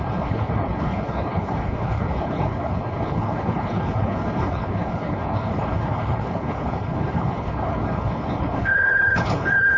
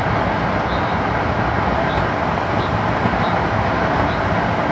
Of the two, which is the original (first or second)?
second